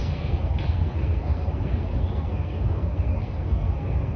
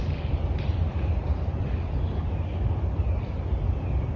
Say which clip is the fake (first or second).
first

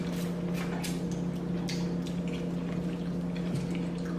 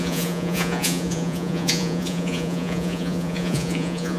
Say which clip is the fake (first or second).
second